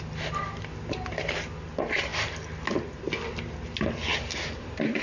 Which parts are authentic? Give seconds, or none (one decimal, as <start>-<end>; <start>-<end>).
0.0-4.1